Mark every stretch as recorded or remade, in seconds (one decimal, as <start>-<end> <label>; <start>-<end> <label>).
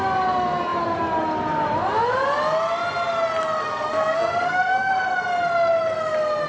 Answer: 0.0-3.6 recorded; 3.6-4.9 remade; 4.9-6.5 recorded